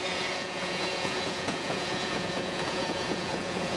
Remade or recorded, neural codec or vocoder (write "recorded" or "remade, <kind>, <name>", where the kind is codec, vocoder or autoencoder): remade, vocoder, Vocos